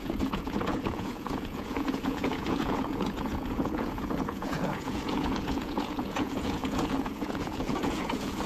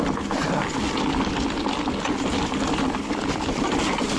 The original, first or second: second